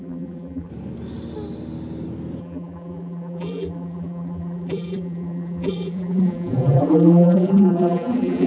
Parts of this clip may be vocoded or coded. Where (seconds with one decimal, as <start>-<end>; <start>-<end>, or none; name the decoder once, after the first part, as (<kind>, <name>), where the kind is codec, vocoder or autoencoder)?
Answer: 0.0-0.7 (vocoder, BigVGAN v2); 2.4-8.5